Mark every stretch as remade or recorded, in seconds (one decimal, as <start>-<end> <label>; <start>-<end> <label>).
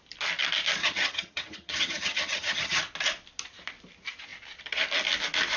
0.0-0.8 recorded; 0.8-2.8 remade; 2.8-5.6 recorded